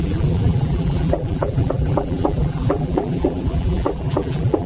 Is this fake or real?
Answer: fake